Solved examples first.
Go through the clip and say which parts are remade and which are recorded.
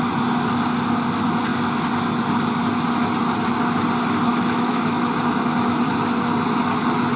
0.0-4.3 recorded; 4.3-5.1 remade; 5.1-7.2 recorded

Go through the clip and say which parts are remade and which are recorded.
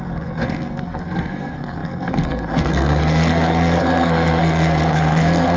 0.0-5.6 remade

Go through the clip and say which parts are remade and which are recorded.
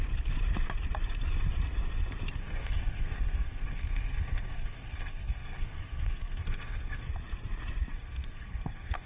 0.0-2.4 recorded; 2.4-7.1 remade; 7.1-7.9 recorded; 7.9-9.1 remade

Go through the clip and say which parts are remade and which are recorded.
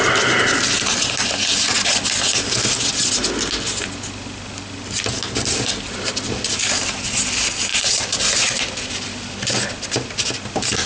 0.0-7.7 recorded; 7.7-8.3 remade; 8.3-10.9 recorded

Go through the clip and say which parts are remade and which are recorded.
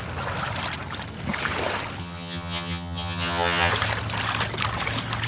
0.0-2.0 recorded; 2.0-3.7 remade; 3.7-5.3 recorded